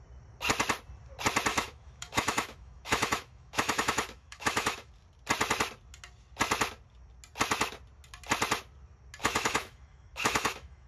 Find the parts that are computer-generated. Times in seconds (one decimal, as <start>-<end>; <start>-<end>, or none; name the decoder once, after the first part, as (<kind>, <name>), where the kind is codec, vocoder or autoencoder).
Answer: 1.5-4.9 (autoencoder, DAC-VAE); 9.2-10.9